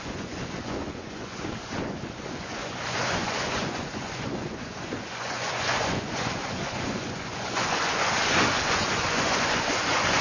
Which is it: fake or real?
fake